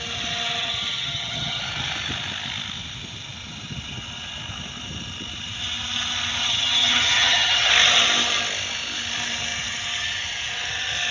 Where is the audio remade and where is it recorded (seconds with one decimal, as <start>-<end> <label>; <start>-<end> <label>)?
0.0-0.6 recorded; 0.6-1.6 remade; 1.6-6.4 recorded; 6.4-7.7 remade; 7.7-11.1 recorded